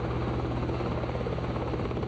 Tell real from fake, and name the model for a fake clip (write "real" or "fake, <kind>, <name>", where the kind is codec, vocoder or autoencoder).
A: real